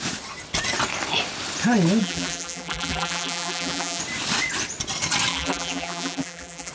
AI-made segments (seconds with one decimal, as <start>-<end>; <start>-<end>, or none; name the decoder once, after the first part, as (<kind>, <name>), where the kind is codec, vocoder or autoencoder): 2.0-4.0 (vocoder, BigVGAN v2); 5.3-6.7

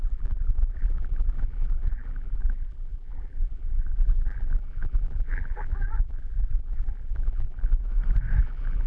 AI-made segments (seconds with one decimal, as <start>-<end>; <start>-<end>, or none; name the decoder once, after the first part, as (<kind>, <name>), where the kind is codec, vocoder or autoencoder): 0.0-7.8 (vocoder, BigVGAN v2); 8.4-8.9

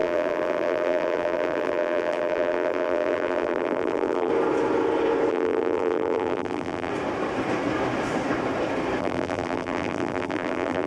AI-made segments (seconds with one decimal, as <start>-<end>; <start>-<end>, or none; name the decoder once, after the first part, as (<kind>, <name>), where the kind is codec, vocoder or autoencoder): 0.0-4.3 (vocoder, BigVGAN v2); 5.3-6.9; 9.0-10.9